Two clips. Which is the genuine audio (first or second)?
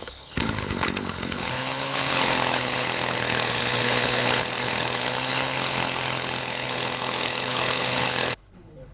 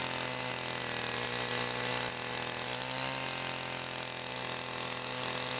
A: second